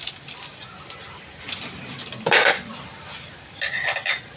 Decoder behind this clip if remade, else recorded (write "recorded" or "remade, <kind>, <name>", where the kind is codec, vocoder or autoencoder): recorded